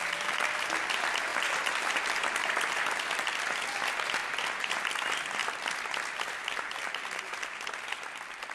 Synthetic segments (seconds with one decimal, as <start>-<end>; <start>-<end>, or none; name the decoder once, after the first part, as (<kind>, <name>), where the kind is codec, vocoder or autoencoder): none